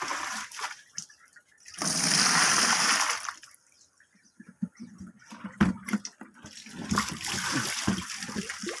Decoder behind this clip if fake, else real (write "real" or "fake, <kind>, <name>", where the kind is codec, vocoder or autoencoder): real